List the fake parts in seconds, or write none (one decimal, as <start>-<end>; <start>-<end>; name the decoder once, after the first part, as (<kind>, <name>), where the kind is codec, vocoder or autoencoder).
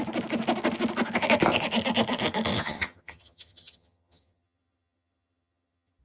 2.6-6.0 (vocoder, HiFi-GAN)